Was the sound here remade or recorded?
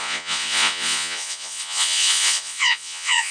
remade